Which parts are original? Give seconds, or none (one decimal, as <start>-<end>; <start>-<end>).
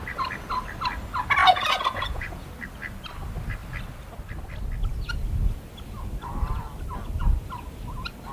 0.0-1.4; 2.5-8.3